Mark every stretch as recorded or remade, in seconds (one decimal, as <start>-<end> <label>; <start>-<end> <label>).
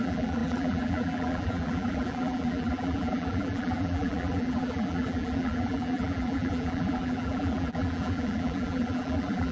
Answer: 0.0-9.5 remade